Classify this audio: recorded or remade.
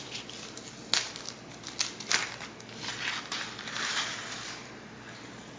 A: recorded